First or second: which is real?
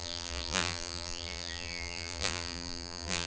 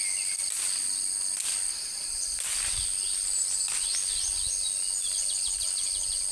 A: second